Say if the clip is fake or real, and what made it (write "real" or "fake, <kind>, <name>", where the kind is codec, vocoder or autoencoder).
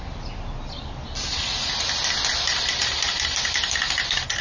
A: real